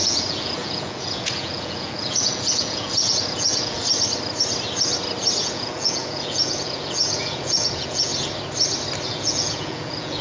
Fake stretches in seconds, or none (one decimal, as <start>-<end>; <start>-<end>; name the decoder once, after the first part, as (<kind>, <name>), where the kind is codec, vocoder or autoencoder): 0.0-3.8 (vocoder, Vocos); 5.4-8.1; 9.1-10.2